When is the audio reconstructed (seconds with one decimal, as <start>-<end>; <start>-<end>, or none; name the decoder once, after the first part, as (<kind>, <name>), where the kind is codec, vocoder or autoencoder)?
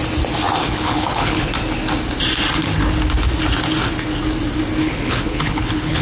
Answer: 0.6-1.5 (codec, HILCodec); 4.8-6.0